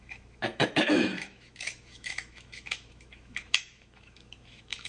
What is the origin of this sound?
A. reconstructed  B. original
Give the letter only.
A